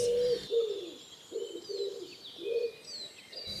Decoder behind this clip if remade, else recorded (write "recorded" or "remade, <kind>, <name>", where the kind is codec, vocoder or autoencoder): recorded